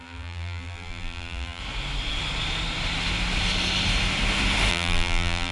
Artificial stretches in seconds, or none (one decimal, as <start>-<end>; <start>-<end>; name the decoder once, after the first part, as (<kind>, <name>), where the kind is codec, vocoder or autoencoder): 0.0-1.6 (vocoder, BigVGAN v2); 4.7-5.5